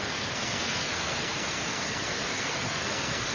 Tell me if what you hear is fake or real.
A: fake